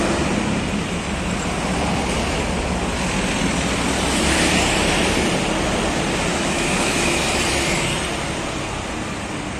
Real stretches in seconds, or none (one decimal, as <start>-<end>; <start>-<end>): 0.0-6.3; 7.2-9.6